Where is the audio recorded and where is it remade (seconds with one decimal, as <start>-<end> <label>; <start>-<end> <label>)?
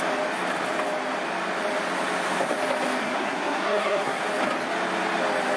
0.0-3.0 recorded; 3.0-4.2 remade; 4.2-5.6 recorded